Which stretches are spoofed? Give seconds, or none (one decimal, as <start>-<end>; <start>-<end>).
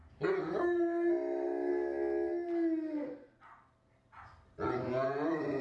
none